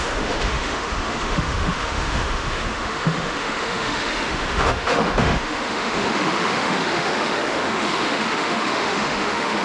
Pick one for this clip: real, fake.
fake